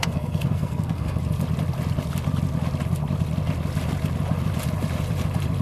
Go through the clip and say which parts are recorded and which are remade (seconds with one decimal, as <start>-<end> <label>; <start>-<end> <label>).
0.0-1.2 remade; 1.2-5.6 recorded